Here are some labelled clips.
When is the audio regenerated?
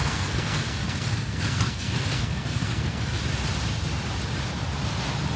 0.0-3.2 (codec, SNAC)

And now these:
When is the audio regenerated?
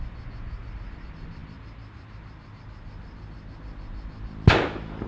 none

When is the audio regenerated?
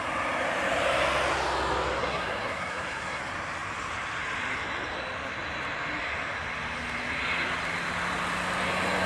2.0-3.2 (codec, SNAC)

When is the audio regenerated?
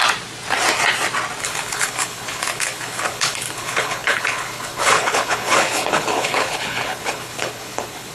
1.4-8.1 (codec, HILCodec)